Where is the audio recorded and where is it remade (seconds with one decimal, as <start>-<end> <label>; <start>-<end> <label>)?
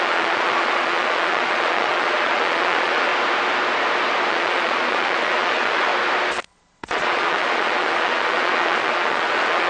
0.0-3.1 remade; 3.1-4.3 recorded; 4.3-5.9 remade; 5.9-6.6 recorded; 6.6-9.7 remade